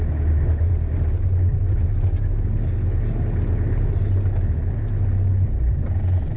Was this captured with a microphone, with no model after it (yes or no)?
yes